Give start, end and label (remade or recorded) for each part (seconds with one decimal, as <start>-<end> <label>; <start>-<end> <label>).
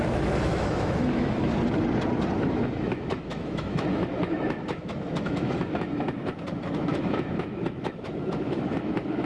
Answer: 0.0-1.5 remade; 1.5-2.5 recorded; 2.5-9.3 remade